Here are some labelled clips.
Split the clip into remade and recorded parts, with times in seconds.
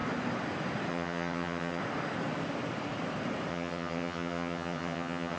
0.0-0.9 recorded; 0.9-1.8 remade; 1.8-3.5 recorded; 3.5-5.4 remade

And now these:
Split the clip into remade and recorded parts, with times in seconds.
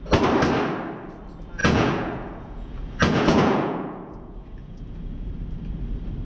0.0-1.6 recorded; 1.6-5.3 remade; 5.3-6.2 recorded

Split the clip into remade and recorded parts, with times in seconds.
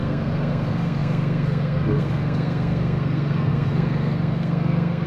0.0-5.1 remade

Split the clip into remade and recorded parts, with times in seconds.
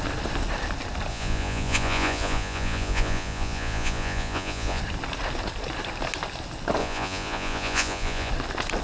0.0-1.1 recorded; 1.1-4.8 remade; 4.8-6.8 recorded; 6.8-8.3 remade; 8.3-8.8 recorded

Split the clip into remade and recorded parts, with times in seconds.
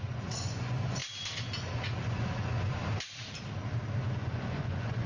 0.0-1.0 remade; 1.0-1.6 recorded; 1.6-2.8 remade; 2.8-4.0 recorded; 4.0-5.1 remade